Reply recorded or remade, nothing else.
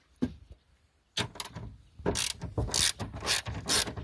recorded